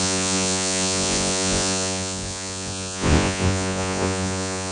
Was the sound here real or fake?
fake